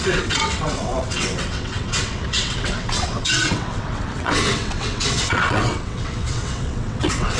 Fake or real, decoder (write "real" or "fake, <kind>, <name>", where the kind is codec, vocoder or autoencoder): fake, vocoder, WaveNeXt